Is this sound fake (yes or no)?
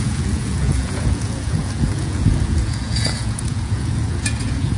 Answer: yes